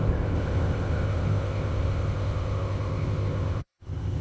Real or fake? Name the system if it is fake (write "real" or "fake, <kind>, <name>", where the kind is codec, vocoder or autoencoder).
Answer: fake, codec, ZipCodec